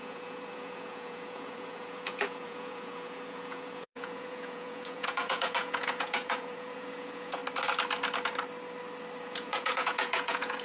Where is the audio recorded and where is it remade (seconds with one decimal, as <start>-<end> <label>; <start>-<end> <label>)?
0.0-7.4 remade; 7.4-9.2 recorded; 9.2-10.6 remade